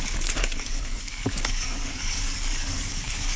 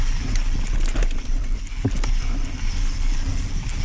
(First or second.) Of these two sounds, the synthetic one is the first